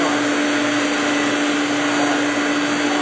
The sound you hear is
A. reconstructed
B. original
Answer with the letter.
B